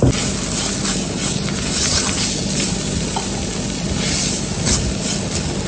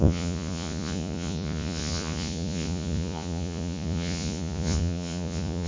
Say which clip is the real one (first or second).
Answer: first